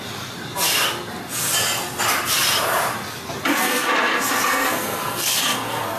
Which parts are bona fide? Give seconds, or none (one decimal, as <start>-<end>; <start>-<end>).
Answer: 0.0-3.5